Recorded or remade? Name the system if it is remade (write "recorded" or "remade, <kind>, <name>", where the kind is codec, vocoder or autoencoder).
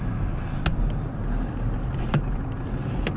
recorded